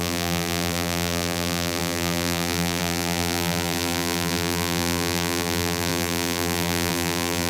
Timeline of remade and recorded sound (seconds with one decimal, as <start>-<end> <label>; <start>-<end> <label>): 0.0-7.5 remade